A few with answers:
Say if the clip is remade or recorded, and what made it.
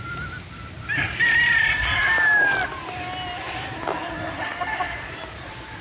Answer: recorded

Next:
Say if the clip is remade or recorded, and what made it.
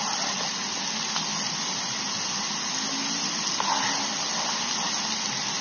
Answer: recorded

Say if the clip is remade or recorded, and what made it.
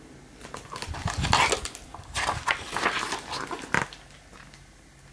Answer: recorded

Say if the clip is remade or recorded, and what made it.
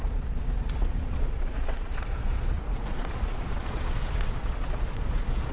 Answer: remade, vocoder, Vocos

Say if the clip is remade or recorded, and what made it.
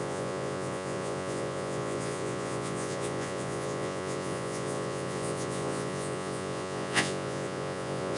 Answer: remade, vocoder, Vocos